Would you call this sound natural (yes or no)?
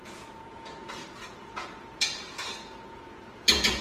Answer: no